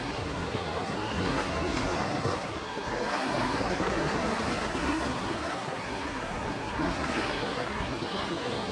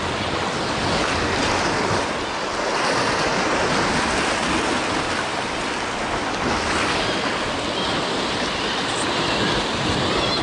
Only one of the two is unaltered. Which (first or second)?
second